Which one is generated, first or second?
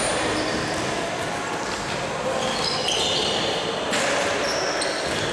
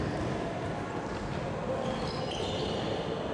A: second